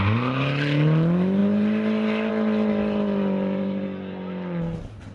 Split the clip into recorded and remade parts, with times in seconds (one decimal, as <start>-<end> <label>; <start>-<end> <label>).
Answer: 0.0-5.1 recorded